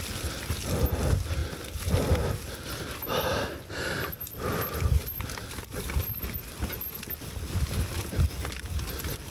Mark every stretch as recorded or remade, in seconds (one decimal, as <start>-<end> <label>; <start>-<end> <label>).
0.0-1.4 recorded; 1.4-2.2 remade; 2.2-3.1 recorded; 3.1-6.0 remade; 6.0-9.3 recorded